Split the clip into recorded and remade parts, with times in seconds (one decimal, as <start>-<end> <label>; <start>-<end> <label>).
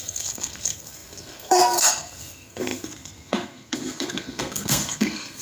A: 0.0-5.4 remade